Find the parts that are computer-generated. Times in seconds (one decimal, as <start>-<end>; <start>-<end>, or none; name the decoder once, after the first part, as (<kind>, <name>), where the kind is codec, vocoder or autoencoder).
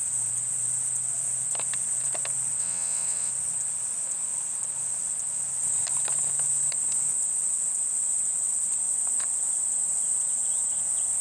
2.6-3.3 (vocoder, WaveNeXt)